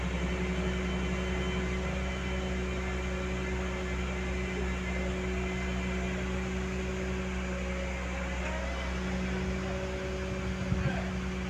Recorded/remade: recorded